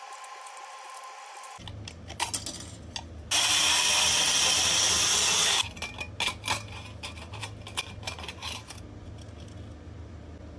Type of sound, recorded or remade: recorded